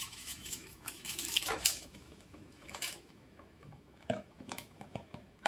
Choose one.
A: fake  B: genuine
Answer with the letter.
A